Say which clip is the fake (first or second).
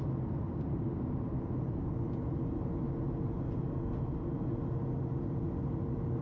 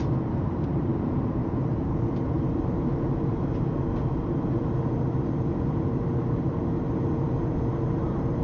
second